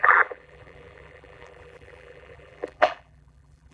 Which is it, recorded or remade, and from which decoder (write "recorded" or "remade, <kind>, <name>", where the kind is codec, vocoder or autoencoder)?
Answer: remade, vocoder, BigVGAN v2